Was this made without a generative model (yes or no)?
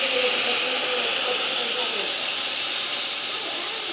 yes